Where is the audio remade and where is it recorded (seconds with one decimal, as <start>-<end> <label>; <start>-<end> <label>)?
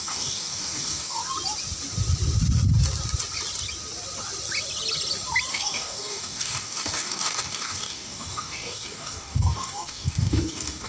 0.0-1.2 remade; 1.2-5.5 recorded; 5.5-10.9 remade